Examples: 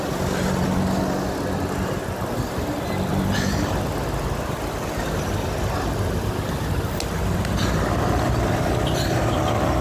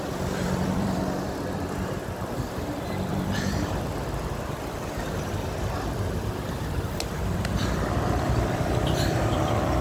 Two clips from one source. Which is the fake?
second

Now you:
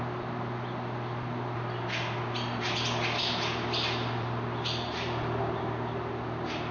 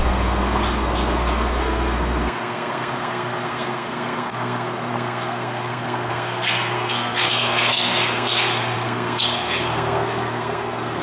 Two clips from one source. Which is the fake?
second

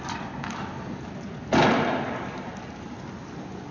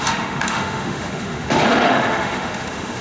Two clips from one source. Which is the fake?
second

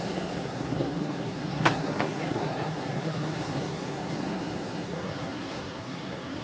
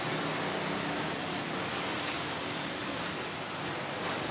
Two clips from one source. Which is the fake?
first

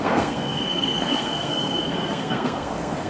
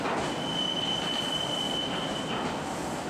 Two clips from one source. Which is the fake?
first